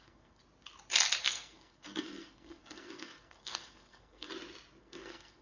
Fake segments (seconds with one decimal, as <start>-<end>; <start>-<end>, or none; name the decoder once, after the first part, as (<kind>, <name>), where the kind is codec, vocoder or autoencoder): 0.0-0.4 (codec, SNAC); 1.2-4.3; 4.8-5.4